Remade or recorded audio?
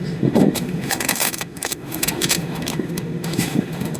remade